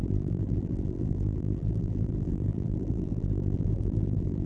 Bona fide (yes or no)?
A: no